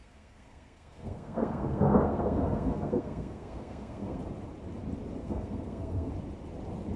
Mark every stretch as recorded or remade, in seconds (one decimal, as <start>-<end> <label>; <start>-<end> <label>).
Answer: 0.0-4.2 remade; 4.2-5.2 recorded; 5.2-6.1 remade; 6.1-7.0 recorded